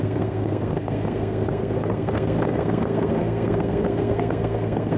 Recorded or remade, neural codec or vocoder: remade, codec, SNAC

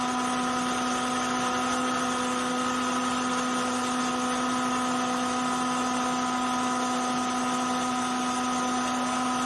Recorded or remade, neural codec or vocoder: recorded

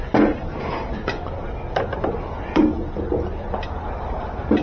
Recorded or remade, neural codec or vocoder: recorded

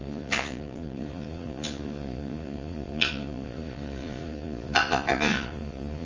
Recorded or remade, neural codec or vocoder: remade, vocoder, Vocos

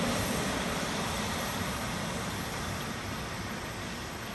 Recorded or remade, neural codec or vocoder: recorded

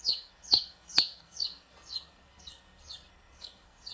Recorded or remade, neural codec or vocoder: remade, codec, SNAC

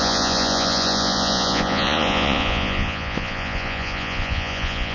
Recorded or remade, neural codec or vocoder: remade, vocoder, Vocos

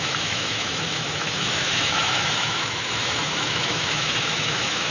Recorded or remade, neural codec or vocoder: remade, autoencoder, DAC-VAE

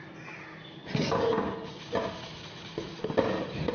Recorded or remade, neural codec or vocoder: recorded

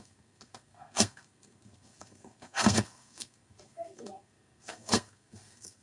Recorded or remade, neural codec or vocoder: remade, codec, SNAC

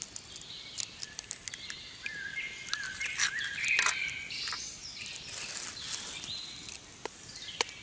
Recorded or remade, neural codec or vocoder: recorded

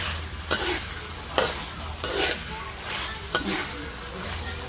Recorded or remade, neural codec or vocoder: recorded